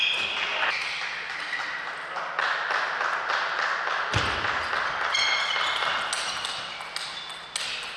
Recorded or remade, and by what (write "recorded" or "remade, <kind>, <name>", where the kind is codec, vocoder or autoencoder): recorded